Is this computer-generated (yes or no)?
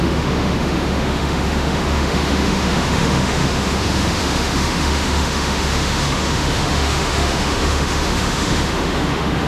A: yes